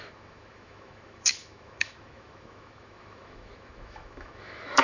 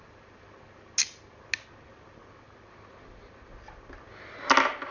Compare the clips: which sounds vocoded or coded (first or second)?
first